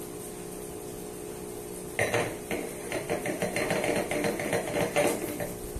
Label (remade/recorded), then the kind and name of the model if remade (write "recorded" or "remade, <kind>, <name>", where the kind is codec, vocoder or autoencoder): recorded